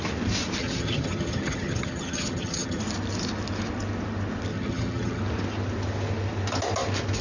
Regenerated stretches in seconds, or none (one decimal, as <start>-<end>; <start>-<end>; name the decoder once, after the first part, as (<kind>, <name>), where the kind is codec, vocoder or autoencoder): 0.6-2.8 (vocoder, HiFi-GAN); 4.5-5.2

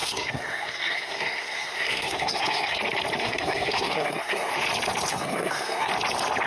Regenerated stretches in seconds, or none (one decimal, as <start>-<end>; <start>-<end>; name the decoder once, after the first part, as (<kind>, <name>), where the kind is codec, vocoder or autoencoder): 0.0-2.8 (codec, SNAC); 3.2-4.5; 5.1-5.9

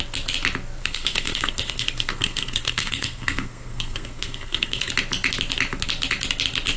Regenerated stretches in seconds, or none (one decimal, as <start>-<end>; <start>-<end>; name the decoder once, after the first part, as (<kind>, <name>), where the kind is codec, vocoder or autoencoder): 0.8-4.9 (codec, SNAC)

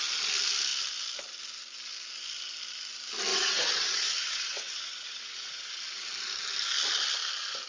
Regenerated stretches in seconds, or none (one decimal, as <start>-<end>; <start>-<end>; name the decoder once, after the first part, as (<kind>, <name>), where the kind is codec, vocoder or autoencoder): 3.3-5.6 (vocoder, WaveNeXt)

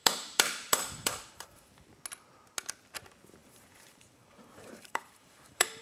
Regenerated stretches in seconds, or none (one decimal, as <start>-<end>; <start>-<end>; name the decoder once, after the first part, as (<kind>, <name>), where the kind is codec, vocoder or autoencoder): 0.0-1.9 (vocoder, BigVGAN v2); 3.4-5.8

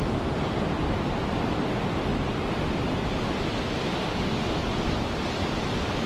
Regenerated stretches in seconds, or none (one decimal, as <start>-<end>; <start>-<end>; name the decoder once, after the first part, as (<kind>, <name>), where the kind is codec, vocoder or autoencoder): 2.1-6.1 (vocoder, BigVGAN v2)